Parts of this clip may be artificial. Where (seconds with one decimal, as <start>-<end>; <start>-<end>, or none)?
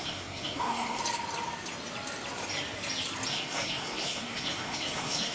0.0-1.0; 3.3-5.3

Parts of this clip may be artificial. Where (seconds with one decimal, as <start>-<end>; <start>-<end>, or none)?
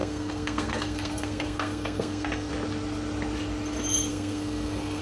0.0-2.5; 4.1-5.0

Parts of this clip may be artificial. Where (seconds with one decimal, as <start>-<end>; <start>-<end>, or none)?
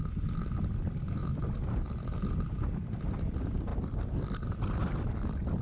none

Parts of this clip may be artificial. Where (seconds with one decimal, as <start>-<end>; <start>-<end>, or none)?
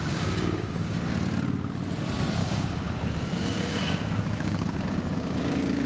0.0-1.1; 2.4-5.9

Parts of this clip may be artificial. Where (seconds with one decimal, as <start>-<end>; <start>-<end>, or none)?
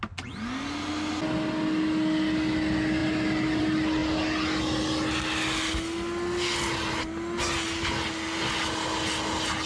none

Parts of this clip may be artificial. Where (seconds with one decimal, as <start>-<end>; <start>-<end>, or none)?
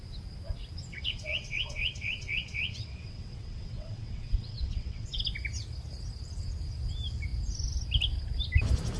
0.9-5.2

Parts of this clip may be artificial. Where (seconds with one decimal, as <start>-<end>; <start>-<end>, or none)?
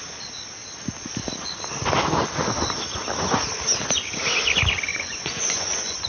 4.9-6.1